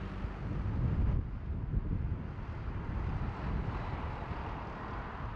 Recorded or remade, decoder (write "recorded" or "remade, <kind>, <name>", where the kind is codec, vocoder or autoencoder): recorded